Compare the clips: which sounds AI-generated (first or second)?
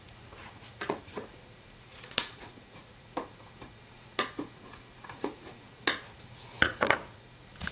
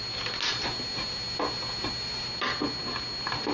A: first